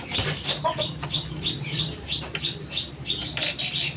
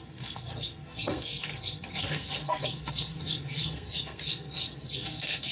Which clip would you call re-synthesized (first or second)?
second